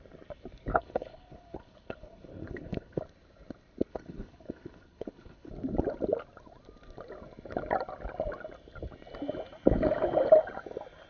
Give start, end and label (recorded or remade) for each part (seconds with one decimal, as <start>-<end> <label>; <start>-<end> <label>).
0.0-0.7 recorded; 0.7-3.0 remade; 3.0-3.9 recorded; 3.9-5.5 remade; 5.5-11.1 recorded